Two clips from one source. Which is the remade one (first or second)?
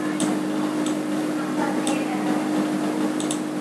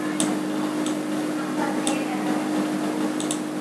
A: first